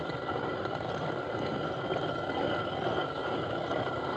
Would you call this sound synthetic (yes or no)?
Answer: no